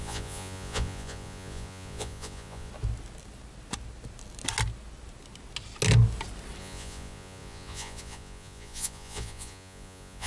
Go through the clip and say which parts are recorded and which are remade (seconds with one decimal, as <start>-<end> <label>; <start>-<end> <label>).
0.0-2.7 remade; 2.7-6.6 recorded; 6.6-10.3 remade